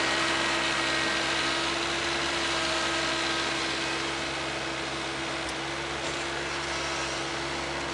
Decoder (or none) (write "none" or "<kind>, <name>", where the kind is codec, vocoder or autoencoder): none